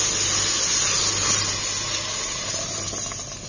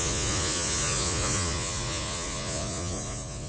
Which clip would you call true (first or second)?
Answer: first